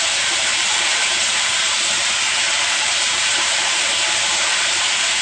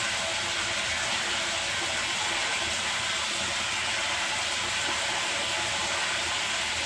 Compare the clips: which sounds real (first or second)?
second